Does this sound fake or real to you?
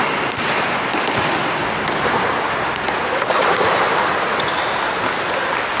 real